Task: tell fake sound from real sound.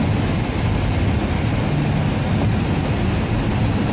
real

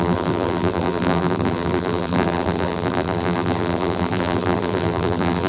fake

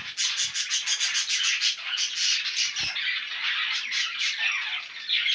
real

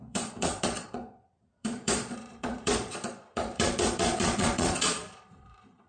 fake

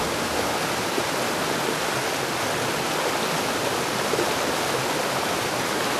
real